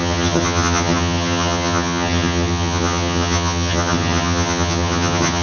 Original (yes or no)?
no